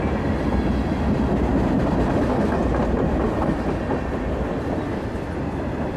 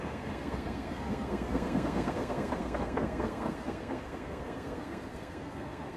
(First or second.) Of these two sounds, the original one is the first